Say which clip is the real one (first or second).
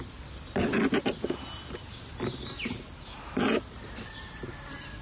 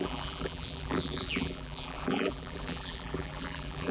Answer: first